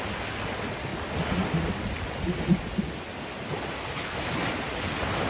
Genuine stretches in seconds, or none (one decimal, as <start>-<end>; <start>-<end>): 0.0-5.3